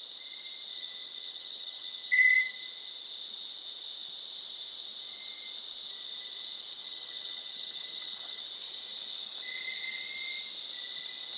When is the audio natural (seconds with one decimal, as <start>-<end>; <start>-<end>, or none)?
0.0-0.7; 2.5-6.8; 8.4-11.4